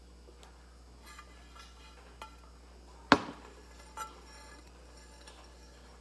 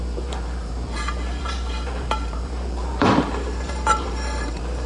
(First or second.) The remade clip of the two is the second